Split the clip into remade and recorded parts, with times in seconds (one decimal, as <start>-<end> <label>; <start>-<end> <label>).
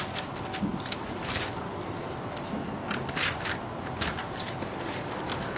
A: 0.0-5.6 recorded